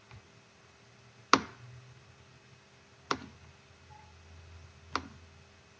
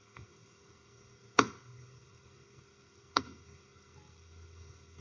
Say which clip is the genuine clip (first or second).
first